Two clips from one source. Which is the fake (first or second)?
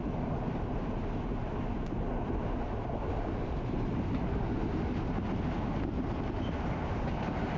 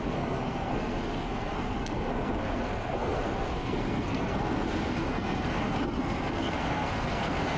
second